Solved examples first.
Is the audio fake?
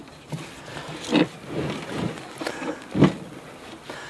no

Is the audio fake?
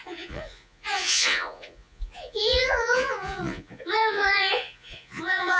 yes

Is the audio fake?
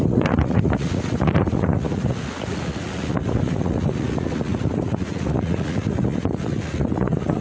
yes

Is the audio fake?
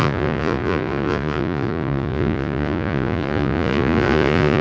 yes